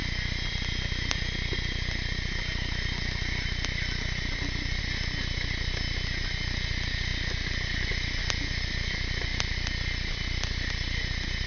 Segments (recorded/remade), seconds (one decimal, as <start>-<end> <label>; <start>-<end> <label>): 0.0-11.5 recorded